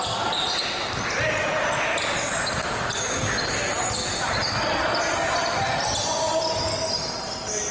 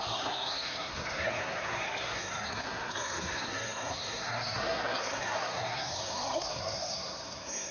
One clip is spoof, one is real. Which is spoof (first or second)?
second